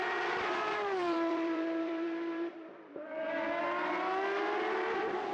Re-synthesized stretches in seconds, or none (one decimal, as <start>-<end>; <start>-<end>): 0.0-3.2